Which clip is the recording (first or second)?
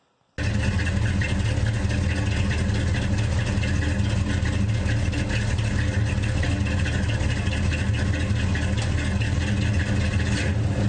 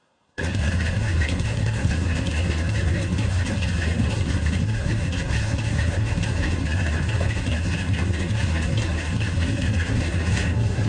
first